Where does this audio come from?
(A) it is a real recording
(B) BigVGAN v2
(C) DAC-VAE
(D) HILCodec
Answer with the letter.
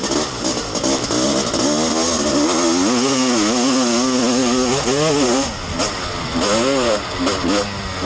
A